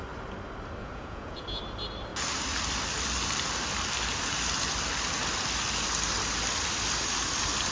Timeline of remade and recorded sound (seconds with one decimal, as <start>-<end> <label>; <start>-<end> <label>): 0.0-0.8 recorded; 0.8-1.6 remade; 1.6-7.7 recorded